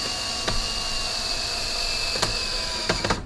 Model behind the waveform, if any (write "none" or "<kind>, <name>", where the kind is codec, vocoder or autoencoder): none